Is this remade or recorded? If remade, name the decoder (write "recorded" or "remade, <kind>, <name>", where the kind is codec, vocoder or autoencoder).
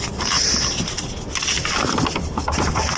recorded